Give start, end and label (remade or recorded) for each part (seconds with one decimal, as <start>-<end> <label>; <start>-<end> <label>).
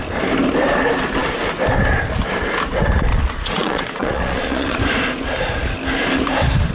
0.0-3.1 recorded; 3.1-4.8 remade; 4.8-6.7 recorded